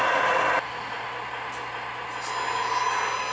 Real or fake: real